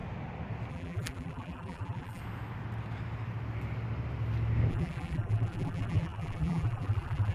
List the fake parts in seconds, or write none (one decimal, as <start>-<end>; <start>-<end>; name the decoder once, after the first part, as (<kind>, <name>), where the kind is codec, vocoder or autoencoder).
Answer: 0.7-2.2 (vocoder, BigVGAN v2); 4.7-7.3